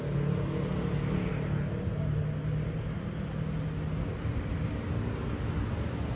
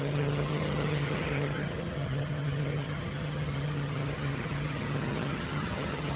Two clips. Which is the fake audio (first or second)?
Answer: second